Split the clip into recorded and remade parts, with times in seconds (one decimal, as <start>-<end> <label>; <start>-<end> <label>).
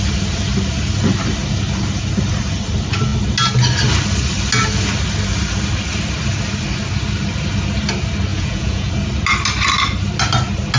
0.0-8.3 recorded; 8.3-8.9 remade; 8.9-10.8 recorded